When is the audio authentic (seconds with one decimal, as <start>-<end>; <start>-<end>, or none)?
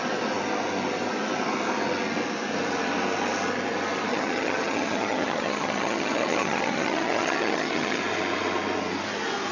0.0-4.1; 8.0-9.5